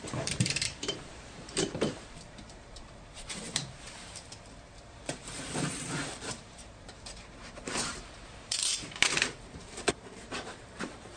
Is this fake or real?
fake